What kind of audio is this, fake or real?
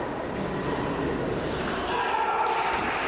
real